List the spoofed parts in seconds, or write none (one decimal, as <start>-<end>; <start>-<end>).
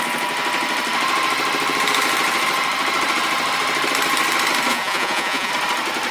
4.7-5.5